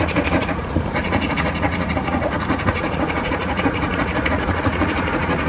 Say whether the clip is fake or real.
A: fake